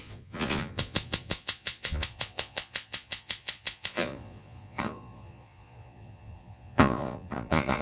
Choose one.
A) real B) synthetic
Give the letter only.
B